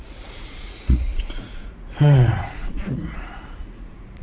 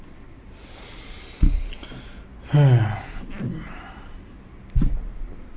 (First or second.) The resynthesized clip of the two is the first